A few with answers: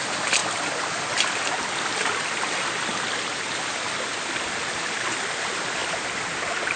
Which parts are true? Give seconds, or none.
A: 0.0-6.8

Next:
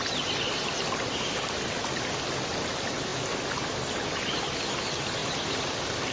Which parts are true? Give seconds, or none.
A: 0.0-5.2

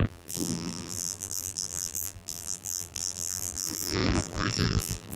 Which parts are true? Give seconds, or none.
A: none

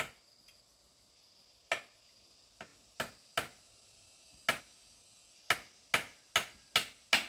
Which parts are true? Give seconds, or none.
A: 0.0-7.3

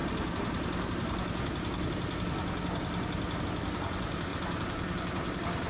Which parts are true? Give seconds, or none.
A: 0.0-4.3

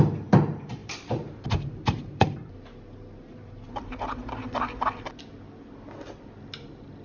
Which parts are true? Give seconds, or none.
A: 0.0-0.8; 4.6-7.0

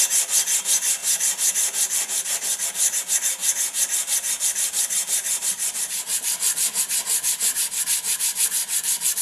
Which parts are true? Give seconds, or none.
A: 0.0-1.0; 3.0-3.4; 6.8-8.1